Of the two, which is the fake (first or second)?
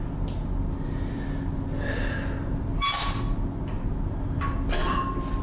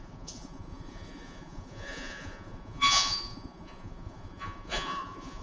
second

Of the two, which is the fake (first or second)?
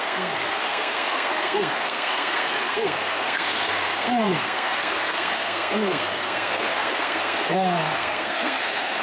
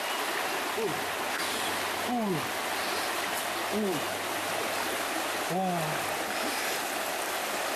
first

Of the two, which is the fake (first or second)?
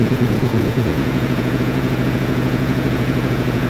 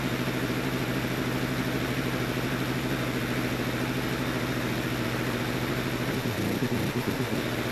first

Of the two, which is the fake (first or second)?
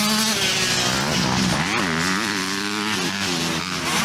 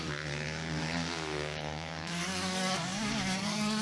second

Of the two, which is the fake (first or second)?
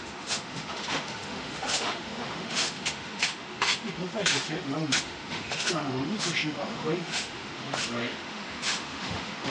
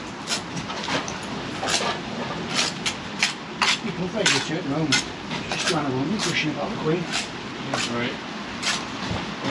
first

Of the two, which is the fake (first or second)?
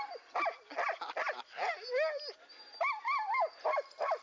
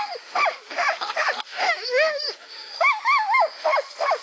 second